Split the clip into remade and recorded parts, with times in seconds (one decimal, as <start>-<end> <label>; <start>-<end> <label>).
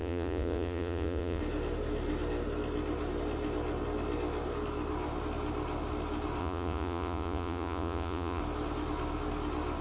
0.0-1.4 remade; 1.4-6.4 recorded; 6.4-8.4 remade; 8.4-9.8 recorded